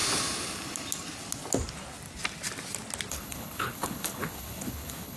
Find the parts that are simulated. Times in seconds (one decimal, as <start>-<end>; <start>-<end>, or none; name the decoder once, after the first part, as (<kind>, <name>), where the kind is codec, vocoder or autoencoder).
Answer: 3.1-5.2 (codec, HILCodec)